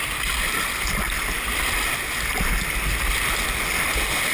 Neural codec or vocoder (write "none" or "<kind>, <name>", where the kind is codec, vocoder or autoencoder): none